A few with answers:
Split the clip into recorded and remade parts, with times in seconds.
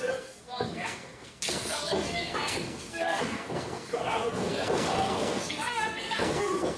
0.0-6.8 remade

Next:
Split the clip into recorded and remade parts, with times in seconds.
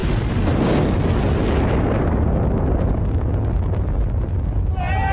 0.0-5.1 recorded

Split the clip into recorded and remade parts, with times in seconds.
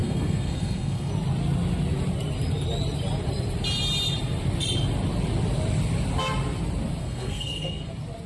0.0-1.1 remade; 1.1-7.0 recorded; 7.0-7.9 remade; 7.9-8.3 recorded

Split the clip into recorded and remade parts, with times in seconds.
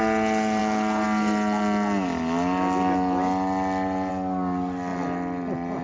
0.0-5.8 recorded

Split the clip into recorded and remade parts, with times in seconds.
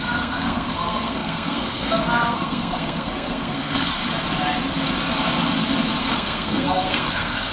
0.0-4.0 remade; 4.0-6.0 recorded; 6.0-7.5 remade